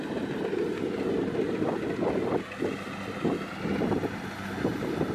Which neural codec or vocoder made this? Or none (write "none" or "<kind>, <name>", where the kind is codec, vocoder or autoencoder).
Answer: none